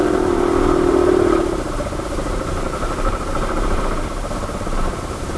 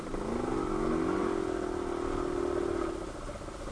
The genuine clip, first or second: second